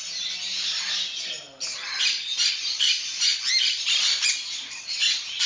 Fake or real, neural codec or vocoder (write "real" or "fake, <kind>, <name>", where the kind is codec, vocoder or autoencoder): real